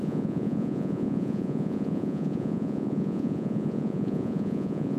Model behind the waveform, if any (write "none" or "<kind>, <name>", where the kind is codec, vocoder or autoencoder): vocoder, Vocos